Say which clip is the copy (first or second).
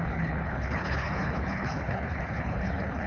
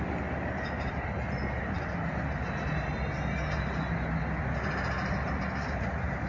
first